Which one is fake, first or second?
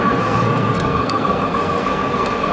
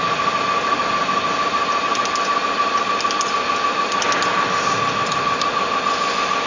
first